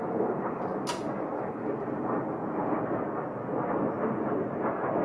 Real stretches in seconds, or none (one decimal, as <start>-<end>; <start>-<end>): 0.0-5.0